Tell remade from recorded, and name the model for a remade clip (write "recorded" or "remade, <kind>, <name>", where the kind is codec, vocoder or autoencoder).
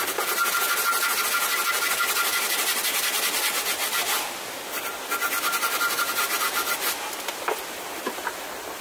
recorded